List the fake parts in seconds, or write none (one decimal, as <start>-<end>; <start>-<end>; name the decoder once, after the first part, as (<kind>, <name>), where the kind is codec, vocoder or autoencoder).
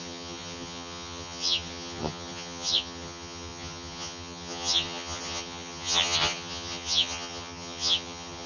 0.0-8.5 (vocoder, HiFi-GAN)